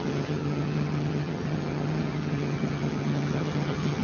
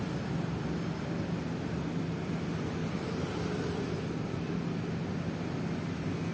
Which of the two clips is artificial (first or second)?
first